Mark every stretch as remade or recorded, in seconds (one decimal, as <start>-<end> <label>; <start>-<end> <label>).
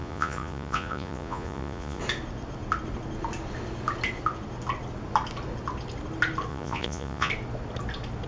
0.0-2.0 remade; 2.0-6.5 recorded; 6.5-7.3 remade; 7.3-8.3 recorded